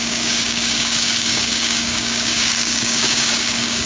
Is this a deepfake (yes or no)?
yes